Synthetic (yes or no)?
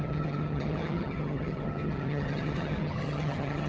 yes